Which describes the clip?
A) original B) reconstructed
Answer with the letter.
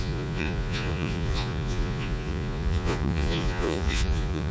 B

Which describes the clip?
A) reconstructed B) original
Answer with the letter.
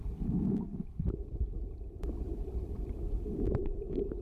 A